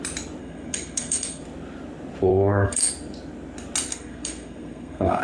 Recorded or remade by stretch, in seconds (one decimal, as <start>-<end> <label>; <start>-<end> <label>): 0.0-0.4 recorded; 0.4-1.4 remade; 1.4-2.3 recorded; 2.3-2.9 remade; 2.9-3.9 recorded; 3.9-5.2 remade